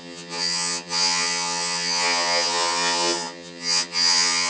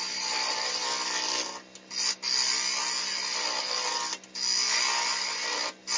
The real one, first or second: second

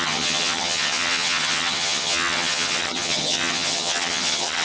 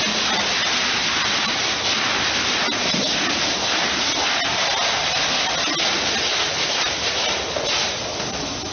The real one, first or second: second